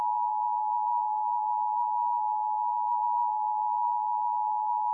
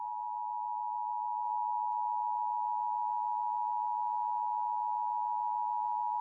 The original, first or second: second